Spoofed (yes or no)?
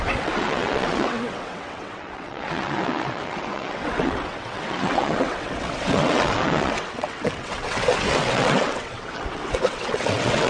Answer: yes